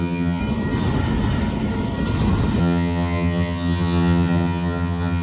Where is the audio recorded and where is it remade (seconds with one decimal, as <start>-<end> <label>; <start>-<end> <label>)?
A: 0.0-0.4 remade; 0.4-2.6 recorded; 2.6-5.2 remade